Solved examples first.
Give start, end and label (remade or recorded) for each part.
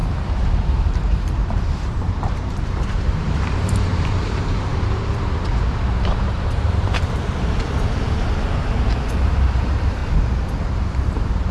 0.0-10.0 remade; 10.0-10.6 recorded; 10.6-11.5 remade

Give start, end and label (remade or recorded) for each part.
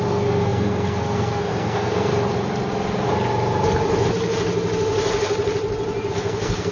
0.0-2.1 remade; 2.1-6.1 recorded; 6.1-6.7 remade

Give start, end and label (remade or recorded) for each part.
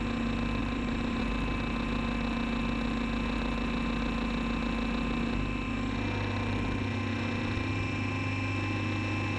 0.0-0.6 recorded; 0.6-1.2 remade; 1.2-9.4 recorded